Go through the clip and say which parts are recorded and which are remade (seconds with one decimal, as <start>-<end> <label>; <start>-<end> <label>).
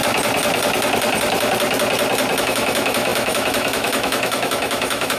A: 0.0-2.4 recorded; 2.4-5.2 remade